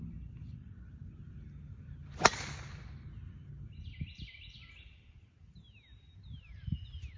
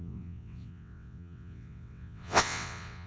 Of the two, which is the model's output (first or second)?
second